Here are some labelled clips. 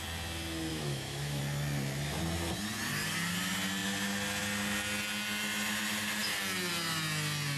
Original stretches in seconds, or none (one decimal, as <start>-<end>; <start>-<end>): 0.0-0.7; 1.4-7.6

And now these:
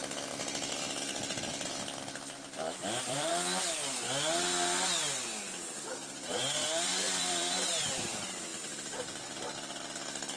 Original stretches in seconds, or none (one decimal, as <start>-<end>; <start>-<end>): 0.0-1.5; 3.3-5.9; 8.5-10.4

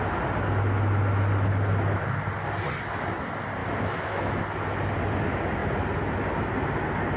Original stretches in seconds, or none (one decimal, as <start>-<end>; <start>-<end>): 0.0-3.6; 4.4-7.2

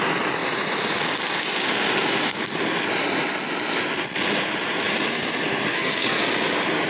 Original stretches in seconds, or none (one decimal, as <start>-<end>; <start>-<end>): 0.0-5.7; 6.2-6.9

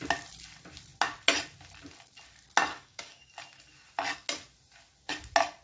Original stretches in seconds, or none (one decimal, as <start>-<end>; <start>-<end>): 0.0-2.7; 3.3-5.6